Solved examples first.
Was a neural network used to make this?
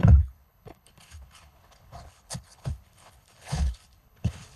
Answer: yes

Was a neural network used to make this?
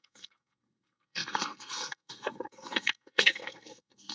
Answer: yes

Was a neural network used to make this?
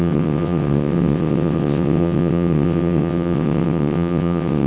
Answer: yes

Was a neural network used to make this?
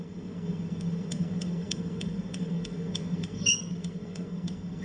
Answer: yes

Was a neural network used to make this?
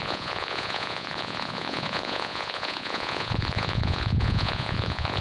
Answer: yes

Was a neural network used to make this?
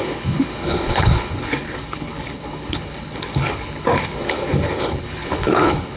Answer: yes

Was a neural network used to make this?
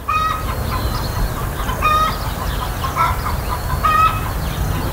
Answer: no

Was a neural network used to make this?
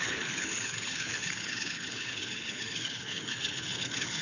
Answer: yes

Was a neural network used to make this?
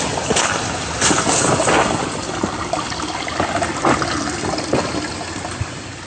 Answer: no